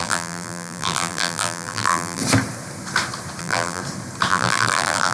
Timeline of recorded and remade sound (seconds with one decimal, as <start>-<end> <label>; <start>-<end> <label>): 0.0-2.2 remade; 2.2-3.4 recorded; 3.4-3.8 remade; 3.8-4.3 recorded; 4.3-5.1 remade